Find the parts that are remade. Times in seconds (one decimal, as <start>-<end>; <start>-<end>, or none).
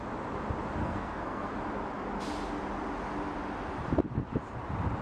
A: 0.8-1.5